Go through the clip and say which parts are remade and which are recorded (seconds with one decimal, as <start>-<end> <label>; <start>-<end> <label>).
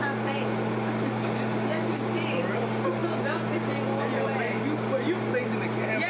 0.0-6.1 recorded